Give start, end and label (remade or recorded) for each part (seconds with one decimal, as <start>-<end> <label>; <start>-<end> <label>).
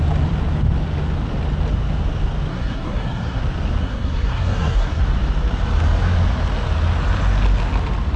0.0-2.5 recorded; 2.5-3.4 remade; 3.4-3.8 recorded; 3.8-5.0 remade; 5.0-8.2 recorded